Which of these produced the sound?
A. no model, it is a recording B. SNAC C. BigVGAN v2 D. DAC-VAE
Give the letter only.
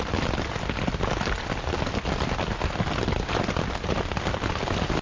C